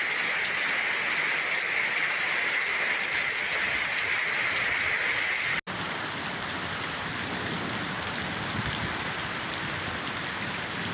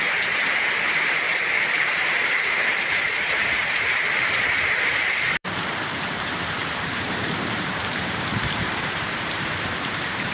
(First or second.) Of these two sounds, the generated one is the second